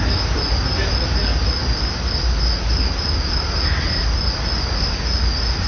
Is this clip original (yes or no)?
yes